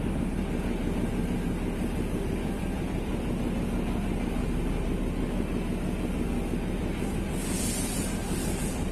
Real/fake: real